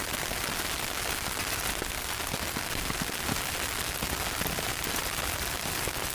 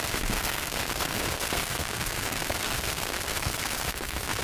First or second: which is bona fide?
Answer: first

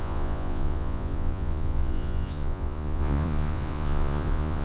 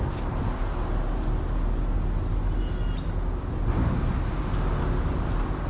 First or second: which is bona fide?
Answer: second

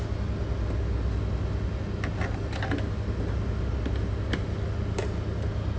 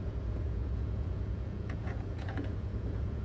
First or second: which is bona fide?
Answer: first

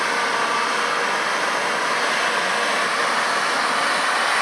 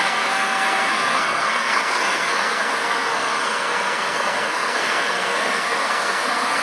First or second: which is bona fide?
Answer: first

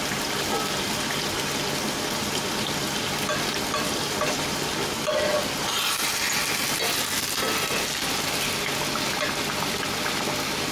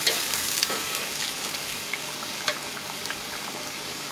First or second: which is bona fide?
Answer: first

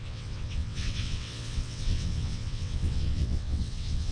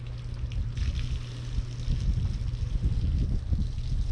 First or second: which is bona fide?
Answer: second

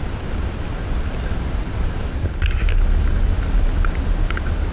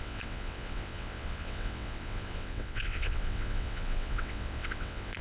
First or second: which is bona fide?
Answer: first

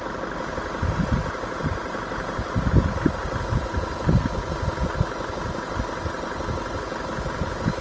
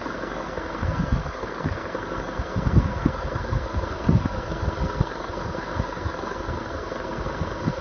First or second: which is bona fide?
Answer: first